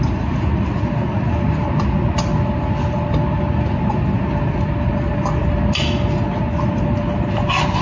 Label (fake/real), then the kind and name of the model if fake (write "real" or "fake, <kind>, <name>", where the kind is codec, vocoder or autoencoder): real